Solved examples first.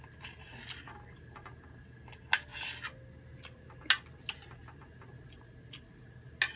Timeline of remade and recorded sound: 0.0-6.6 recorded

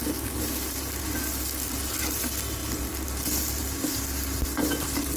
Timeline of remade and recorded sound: 0.0-5.2 recorded

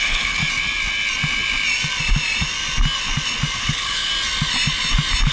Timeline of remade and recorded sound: 0.0-0.4 remade; 0.4-3.6 recorded; 3.6-4.1 remade; 4.1-5.3 recorded

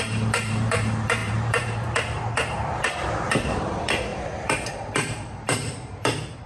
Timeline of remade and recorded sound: 0.0-6.5 remade

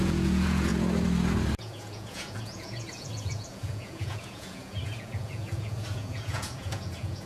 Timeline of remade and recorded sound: 0.0-0.7 remade; 0.7-1.6 recorded; 1.6-7.3 remade

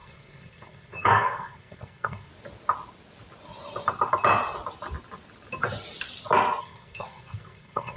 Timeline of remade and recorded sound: 0.0-2.3 remade; 2.3-6.6 recorded; 6.6-8.0 remade

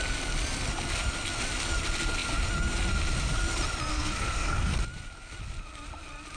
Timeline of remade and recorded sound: 0.0-3.9 recorded; 3.9-4.8 remade; 4.8-6.4 recorded